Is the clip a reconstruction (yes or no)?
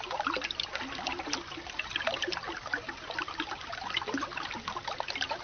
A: no